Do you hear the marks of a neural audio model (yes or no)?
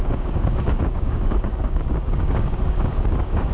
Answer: yes